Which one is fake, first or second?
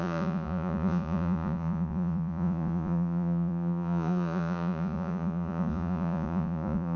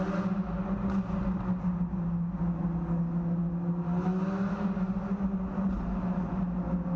first